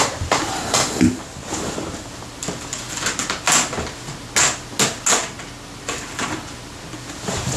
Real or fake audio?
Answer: real